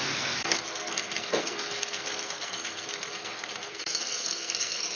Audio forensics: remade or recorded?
remade